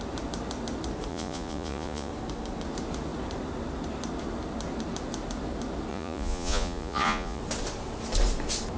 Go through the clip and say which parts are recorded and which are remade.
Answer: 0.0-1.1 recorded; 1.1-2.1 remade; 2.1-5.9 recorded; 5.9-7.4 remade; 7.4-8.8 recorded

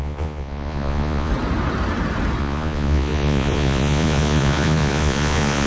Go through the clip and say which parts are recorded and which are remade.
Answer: 0.0-1.3 remade; 1.3-2.4 recorded; 2.4-5.7 remade

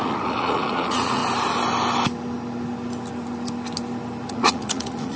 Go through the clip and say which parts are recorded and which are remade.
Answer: 0.0-1.2 remade; 1.2-4.3 recorded; 4.3-5.2 remade

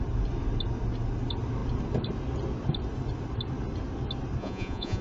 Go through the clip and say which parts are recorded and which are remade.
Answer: 0.0-4.4 recorded; 4.4-5.0 remade

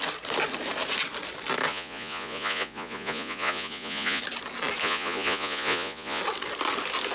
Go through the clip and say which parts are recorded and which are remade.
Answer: 0.0-1.7 recorded; 1.7-4.2 remade; 4.2-4.8 recorded; 4.8-6.2 remade; 6.2-7.1 recorded

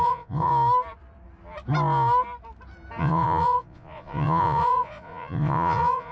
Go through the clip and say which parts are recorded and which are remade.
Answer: 0.0-0.5 remade; 0.5-3.0 recorded; 3.0-6.1 remade

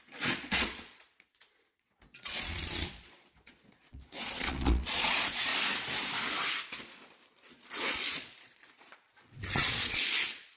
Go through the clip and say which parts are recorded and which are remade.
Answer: 0.0-5.5 remade; 5.5-7.3 recorded; 7.3-10.6 remade

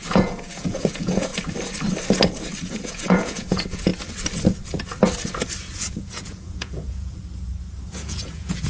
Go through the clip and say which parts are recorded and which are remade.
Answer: 0.0-1.3 remade; 1.3-2.7 recorded; 2.7-3.9 remade; 3.9-5.8 recorded; 5.8-7.2 remade; 7.2-7.9 recorded; 7.9-8.7 remade